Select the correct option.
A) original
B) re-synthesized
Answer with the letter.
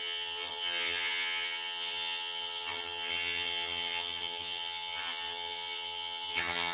B